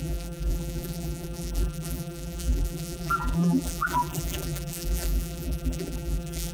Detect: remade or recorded remade